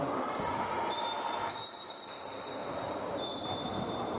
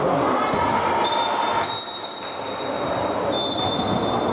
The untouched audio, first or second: second